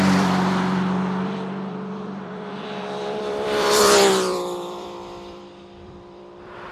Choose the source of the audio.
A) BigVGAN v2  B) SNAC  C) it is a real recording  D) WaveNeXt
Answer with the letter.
A